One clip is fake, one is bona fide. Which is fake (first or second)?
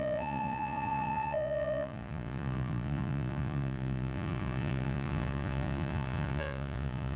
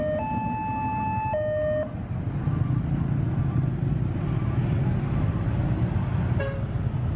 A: first